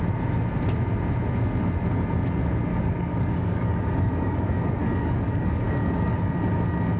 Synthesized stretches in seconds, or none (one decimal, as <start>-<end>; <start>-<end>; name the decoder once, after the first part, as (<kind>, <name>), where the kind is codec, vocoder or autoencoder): 2.7-6.2 (codec, DAC)